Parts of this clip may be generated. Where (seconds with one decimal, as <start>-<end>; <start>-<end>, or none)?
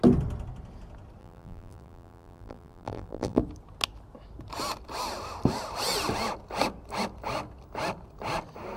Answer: 1.2-3.4